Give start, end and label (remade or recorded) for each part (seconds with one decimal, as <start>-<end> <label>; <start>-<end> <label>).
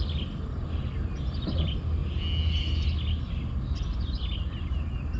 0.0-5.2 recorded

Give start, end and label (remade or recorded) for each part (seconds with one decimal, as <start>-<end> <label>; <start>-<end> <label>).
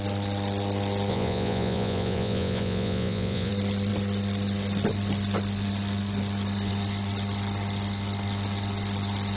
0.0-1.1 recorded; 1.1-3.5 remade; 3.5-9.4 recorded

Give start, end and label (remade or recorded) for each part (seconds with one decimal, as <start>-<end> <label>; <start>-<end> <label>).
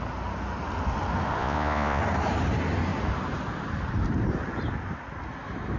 0.0-1.4 recorded; 1.4-2.0 remade; 2.0-5.8 recorded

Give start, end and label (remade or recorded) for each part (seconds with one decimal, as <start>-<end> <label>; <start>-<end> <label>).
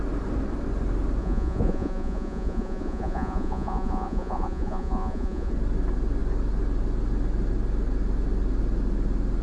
0.0-1.2 recorded; 1.2-5.5 remade; 5.5-9.4 recorded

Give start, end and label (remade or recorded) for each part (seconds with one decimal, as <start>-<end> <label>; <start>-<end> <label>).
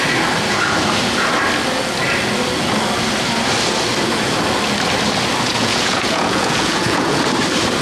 0.0-5.5 recorded; 5.5-7.2 remade; 7.2-7.8 recorded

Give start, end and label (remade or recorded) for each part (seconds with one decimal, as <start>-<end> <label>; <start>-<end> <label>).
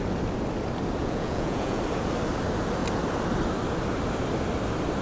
0.0-1.0 recorded; 1.0-1.8 remade; 1.8-5.0 recorded